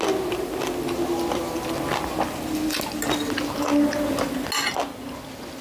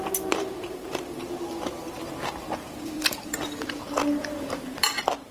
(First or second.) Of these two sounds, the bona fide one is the first